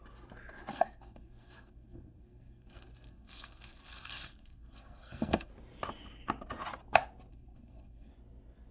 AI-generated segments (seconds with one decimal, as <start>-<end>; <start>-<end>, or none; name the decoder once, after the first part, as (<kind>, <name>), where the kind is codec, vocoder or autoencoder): 0.7-5.5 (codec, SNAC); 7.3-8.1